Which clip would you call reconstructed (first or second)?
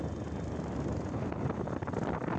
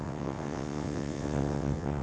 second